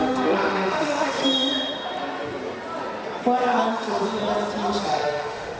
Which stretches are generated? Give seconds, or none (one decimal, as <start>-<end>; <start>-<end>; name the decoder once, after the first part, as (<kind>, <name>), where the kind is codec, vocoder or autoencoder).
0.0-1.2 (autoencoder, DAC-VAE); 3.7-4.2; 4.8-5.6